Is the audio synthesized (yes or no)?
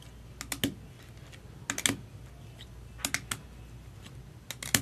no